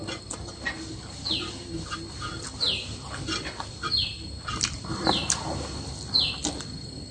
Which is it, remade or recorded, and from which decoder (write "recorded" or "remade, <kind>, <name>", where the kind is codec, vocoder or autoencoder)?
recorded